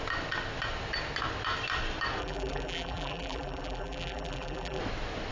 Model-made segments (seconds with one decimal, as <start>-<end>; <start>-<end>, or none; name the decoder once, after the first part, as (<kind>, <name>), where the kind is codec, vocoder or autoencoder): 2.2-4.8 (vocoder, BigVGAN v2)